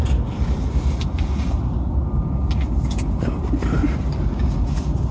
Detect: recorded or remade recorded